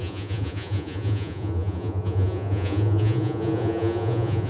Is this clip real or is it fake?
fake